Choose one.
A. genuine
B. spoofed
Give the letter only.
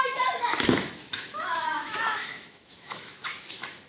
B